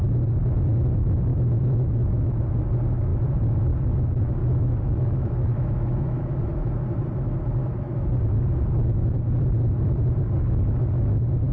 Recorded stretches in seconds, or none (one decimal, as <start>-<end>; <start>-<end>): 0.0-1.3; 2.4-4.4; 6.7-7.6; 8.1-11.5

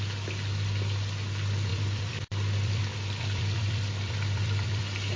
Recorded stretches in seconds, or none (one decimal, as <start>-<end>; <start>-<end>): 0.0-1.7; 4.8-5.2

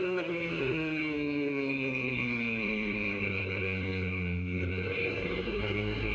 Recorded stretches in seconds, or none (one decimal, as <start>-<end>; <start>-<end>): none

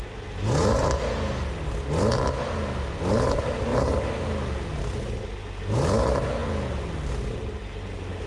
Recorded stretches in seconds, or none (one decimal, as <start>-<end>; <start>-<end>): 0.0-8.3